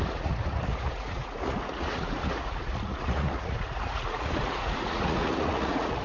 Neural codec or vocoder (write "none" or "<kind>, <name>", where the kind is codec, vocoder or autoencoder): vocoder, Vocos